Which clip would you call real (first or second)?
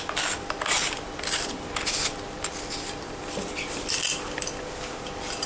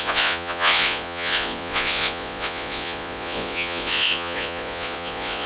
first